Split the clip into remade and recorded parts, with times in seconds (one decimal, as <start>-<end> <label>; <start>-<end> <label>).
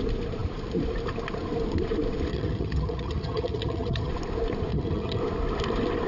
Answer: 0.0-2.3 recorded; 2.3-4.1 remade; 4.1-4.7 recorded; 4.7-5.2 remade; 5.2-6.1 recorded